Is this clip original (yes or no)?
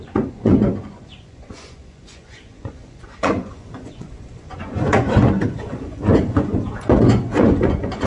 no